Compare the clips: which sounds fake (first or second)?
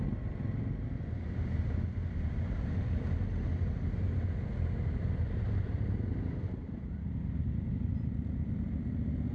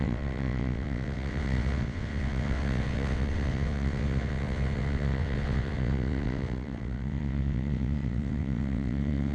second